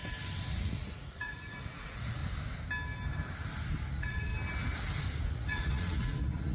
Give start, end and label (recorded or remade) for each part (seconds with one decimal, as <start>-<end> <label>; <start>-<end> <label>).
0.0-0.5 recorded; 0.5-2.2 remade; 2.2-3.9 recorded; 3.9-4.3 remade; 4.3-5.3 recorded; 5.3-6.5 remade

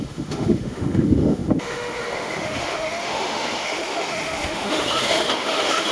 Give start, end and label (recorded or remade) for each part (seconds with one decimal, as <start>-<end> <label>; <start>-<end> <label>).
0.0-5.9 remade

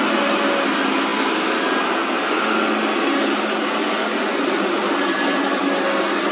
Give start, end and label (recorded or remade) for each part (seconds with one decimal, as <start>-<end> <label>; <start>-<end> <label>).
0.0-6.3 recorded

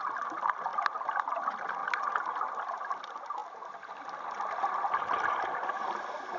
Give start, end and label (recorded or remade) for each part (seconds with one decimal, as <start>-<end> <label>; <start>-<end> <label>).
0.0-6.4 recorded

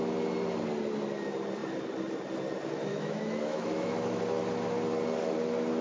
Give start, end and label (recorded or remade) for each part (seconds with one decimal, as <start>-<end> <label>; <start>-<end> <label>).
0.0-2.9 recorded; 2.9-4.2 remade; 4.2-5.8 recorded

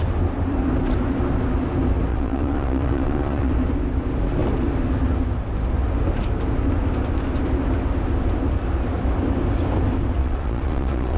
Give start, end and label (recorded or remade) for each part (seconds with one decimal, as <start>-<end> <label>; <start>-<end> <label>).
0.0-2.1 recorded; 2.1-3.5 remade; 3.5-10.2 recorded; 10.2-11.2 remade

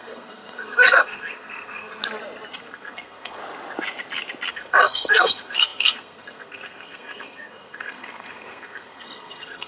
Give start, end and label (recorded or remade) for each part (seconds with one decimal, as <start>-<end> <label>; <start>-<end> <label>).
0.0-2.0 remade; 2.0-2.6 recorded; 2.6-3.4 remade; 3.4-4.5 recorded; 4.5-9.7 remade

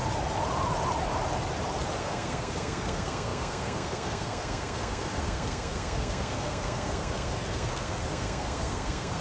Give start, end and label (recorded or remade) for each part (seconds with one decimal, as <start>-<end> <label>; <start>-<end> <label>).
0.0-2.0 recorded; 2.0-9.2 remade